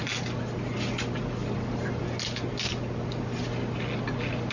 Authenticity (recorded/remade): recorded